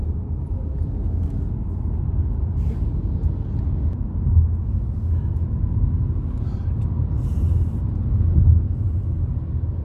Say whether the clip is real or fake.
real